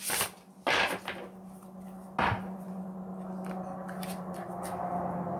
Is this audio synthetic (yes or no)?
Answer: no